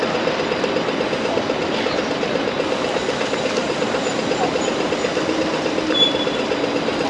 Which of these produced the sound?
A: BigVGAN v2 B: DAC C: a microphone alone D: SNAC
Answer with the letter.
C